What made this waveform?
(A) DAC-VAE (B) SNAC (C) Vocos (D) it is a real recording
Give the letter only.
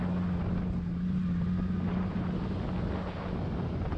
D